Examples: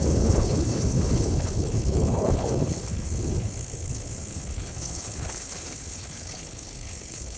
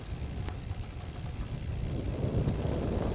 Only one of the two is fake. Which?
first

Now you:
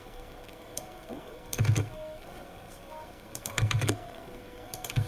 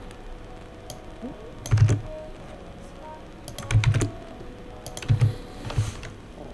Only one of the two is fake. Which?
first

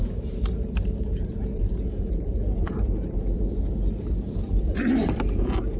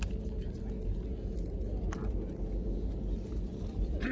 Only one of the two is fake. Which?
first